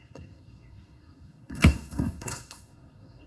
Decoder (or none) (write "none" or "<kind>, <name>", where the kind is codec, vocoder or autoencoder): codec, SNAC